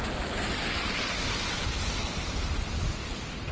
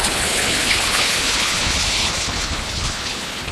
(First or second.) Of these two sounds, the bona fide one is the first